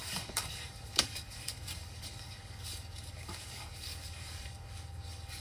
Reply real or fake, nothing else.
fake